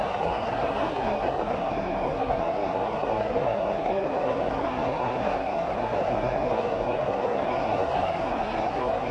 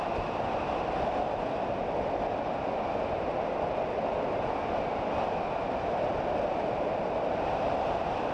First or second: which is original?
second